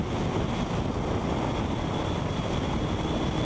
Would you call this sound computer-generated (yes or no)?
no